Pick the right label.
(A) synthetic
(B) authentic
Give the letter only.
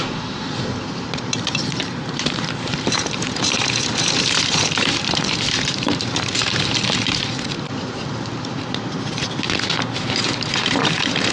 A